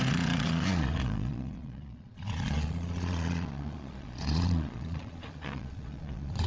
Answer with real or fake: fake